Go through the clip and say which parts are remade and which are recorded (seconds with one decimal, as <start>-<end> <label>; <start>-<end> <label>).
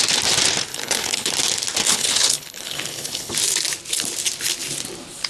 0.0-0.7 recorded; 0.7-1.3 remade; 1.3-1.9 recorded; 1.9-3.3 remade; 3.3-5.3 recorded